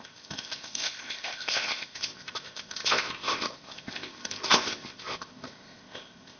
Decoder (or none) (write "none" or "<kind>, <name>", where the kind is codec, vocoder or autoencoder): codec, ZipCodec